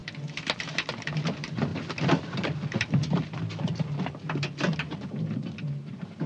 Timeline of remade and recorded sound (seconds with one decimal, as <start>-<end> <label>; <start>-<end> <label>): 0.0-1.7 remade; 1.7-4.8 recorded; 4.8-6.3 remade